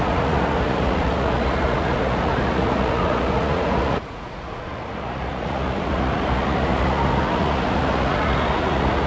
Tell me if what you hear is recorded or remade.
remade